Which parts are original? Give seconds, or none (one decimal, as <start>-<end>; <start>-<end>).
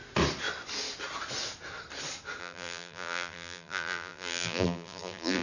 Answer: 0.0-2.4